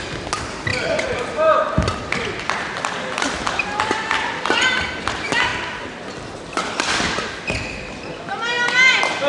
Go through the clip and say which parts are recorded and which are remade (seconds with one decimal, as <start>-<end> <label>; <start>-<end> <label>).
0.0-0.7 recorded; 0.7-4.9 remade; 4.9-5.5 recorded; 5.5-6.0 remade; 6.0-9.3 recorded